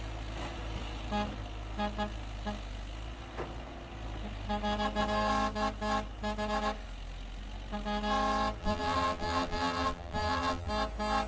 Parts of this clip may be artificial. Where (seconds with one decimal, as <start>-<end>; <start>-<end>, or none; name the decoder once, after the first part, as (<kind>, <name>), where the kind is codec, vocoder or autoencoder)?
8.6-10.7 (vocoder, BigVGAN v2)